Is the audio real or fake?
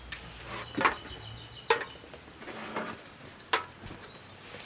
real